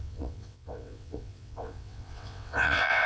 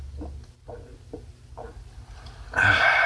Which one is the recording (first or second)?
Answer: second